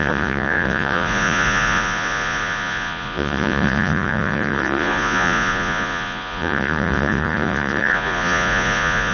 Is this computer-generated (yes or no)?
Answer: yes